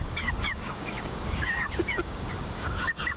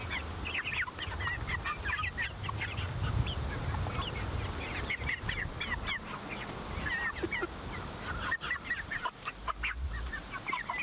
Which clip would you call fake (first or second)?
first